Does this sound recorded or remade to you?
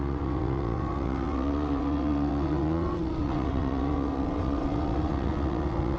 remade